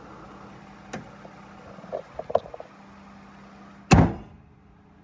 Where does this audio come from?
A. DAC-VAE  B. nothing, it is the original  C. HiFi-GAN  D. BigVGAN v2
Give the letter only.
B